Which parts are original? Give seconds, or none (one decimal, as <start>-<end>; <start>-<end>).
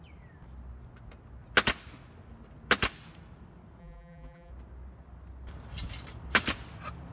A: 0.0-3.8; 4.5-7.1